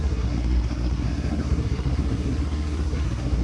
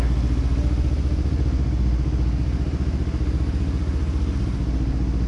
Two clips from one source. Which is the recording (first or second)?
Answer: second